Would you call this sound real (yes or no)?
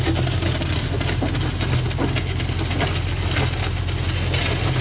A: yes